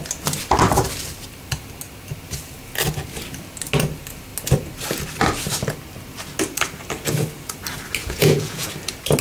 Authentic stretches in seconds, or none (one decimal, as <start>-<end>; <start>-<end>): 0.0-8.0; 8.7-9.2